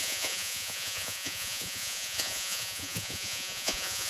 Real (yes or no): no